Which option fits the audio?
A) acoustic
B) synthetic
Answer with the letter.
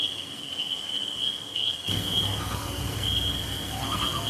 B